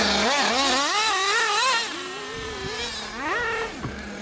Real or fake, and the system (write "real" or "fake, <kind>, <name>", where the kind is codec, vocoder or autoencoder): real